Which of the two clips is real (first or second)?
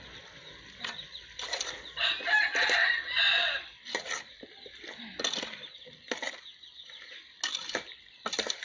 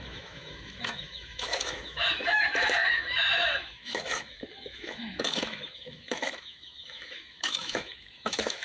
first